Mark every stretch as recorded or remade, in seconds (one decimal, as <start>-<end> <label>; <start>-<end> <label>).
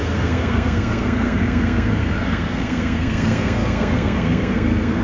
0.0-5.0 remade